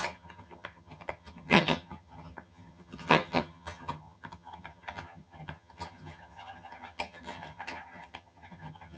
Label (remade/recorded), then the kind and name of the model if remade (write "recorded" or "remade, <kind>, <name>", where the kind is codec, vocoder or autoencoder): remade, vocoder, HiFi-GAN